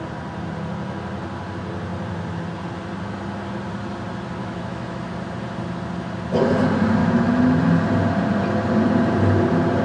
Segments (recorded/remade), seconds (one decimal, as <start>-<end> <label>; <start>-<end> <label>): 0.0-4.4 recorded; 4.4-5.0 remade; 5.0-7.0 recorded; 7.0-7.6 remade; 7.6-9.8 recorded